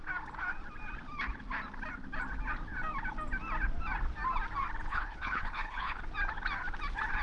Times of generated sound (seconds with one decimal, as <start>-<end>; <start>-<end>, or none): 4.9-6.0